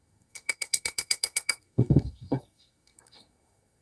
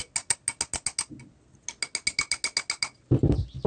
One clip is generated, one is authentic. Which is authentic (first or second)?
second